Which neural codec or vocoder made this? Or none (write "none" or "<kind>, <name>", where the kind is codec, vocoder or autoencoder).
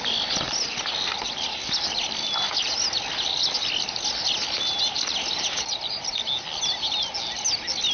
none